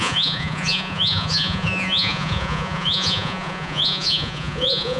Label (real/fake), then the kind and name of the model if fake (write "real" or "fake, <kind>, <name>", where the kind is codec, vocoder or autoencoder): fake, vocoder, Vocos